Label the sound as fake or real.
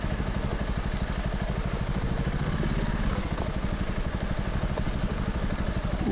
real